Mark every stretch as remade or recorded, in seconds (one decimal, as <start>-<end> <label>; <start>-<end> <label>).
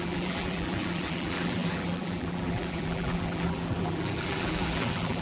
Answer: 0.0-5.2 remade